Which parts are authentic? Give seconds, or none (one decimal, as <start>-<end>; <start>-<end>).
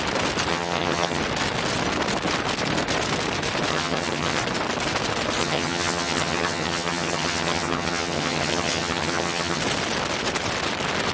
0.0-0.5; 1.2-3.7; 4.4-5.4; 9.6-11.1